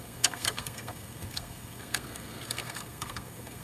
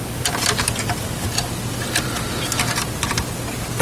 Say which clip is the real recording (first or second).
second